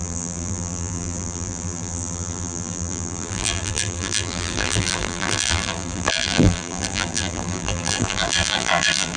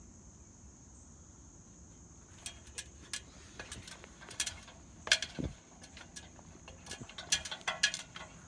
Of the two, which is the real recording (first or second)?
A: second